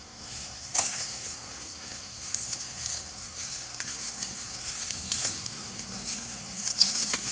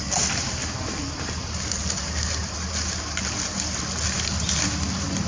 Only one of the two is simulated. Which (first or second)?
first